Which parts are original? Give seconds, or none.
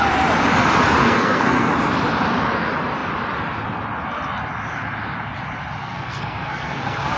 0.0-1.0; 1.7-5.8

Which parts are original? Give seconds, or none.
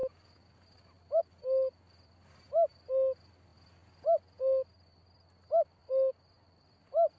0.0-7.2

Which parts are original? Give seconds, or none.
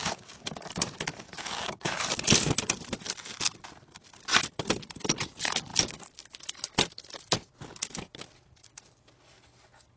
0.5-1.1; 1.9-10.0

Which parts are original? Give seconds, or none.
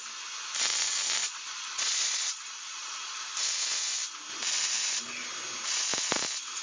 0.0-1.2; 3.2-6.6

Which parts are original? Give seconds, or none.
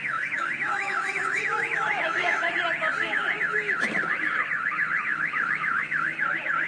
2.5-2.9; 3.8-5.1; 6.2-6.7